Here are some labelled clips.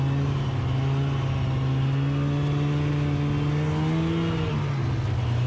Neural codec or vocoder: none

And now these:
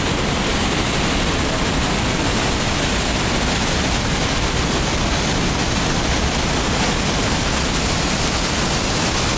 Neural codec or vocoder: none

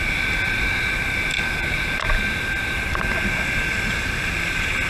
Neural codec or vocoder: none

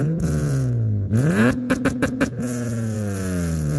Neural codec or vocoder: vocoder, Vocos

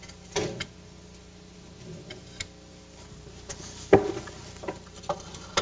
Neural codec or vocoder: none